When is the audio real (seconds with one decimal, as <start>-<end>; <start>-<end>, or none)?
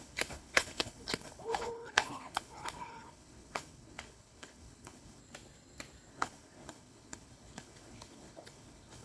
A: 5.2-6.1